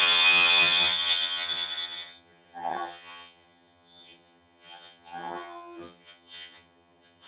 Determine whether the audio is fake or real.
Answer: fake